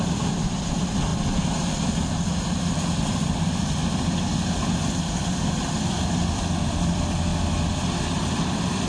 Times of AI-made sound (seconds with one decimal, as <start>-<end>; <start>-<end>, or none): 0.0-7.3; 8.4-8.9